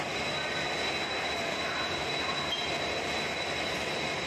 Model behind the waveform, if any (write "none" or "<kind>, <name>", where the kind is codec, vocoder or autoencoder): none